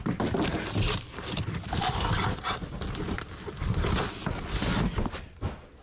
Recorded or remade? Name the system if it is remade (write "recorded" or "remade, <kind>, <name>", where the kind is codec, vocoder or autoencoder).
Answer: recorded